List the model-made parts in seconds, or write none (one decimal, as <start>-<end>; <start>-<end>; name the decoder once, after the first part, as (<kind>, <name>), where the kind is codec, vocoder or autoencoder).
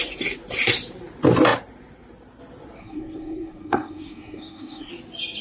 2.8-4.9 (codec, SNAC)